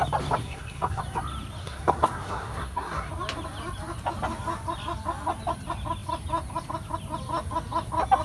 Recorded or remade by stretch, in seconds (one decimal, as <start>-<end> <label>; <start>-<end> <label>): 0.0-0.4 recorded; 0.4-1.0 remade; 1.0-1.6 recorded; 1.6-3.1 remade; 3.1-8.2 recorded